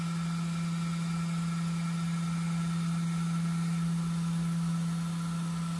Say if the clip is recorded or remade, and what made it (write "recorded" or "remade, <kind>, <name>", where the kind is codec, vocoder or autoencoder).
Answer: recorded